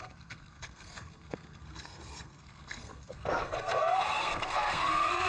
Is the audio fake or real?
fake